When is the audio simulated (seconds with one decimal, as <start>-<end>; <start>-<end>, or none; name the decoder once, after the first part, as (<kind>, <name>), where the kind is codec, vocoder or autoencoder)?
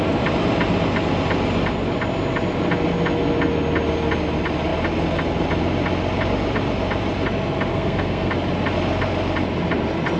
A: 7.7-8.3 (codec, SNAC)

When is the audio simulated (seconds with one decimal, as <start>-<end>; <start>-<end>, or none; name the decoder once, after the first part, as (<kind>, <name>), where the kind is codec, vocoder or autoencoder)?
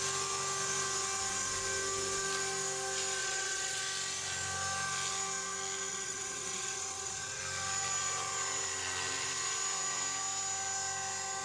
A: 3.2-3.8 (vocoder, WaveNeXt); 5.9-7.4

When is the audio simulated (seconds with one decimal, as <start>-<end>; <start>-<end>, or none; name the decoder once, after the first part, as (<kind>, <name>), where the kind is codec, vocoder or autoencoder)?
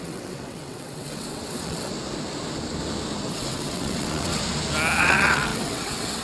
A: 0.0-1.9 (vocoder, WaveNeXt); 3.3-4.4; 5.0-6.2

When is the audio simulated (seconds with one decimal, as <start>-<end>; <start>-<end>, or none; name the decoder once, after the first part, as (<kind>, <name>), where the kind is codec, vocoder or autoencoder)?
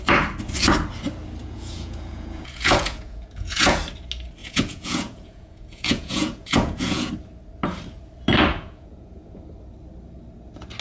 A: 1.4-3.8 (vocoder, Vocos); 4.4-7.1; 8.5-9.4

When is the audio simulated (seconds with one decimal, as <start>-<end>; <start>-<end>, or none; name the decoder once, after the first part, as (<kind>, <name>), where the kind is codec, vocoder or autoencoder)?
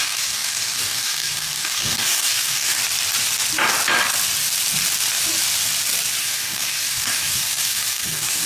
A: 0.0-2.8 (codec, DAC); 6.2-8.5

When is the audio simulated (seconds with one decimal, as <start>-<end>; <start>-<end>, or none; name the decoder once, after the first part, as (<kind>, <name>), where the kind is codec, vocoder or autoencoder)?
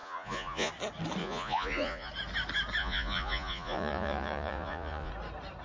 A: 0.0-0.7 (vocoder, Vocos); 1.2-2.1; 2.8-5.1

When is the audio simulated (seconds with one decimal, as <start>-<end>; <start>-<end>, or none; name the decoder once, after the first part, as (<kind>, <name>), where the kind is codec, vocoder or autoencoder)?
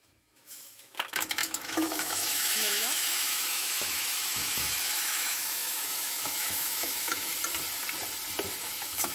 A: 0.0-7.3 (autoencoder, DAC-VAE); 8.6-9.1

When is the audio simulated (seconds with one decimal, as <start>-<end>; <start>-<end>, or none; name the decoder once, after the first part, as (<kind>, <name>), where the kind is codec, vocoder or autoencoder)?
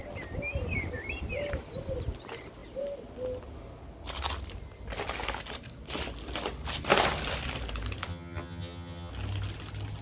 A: 8.1-9.1 (vocoder, HiFi-GAN)